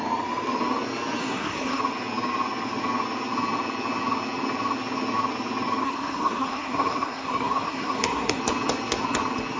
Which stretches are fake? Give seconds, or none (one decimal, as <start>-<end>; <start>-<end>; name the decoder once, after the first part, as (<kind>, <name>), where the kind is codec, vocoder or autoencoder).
1.2-1.8 (codec, SNAC); 5.8-8.4